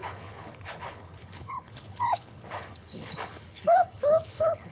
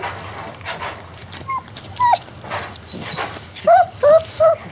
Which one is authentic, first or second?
second